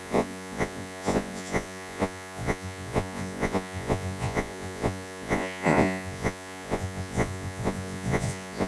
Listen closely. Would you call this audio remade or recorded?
remade